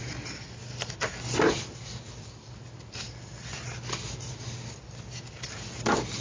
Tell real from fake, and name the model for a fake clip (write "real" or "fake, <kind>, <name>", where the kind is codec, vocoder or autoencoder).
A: real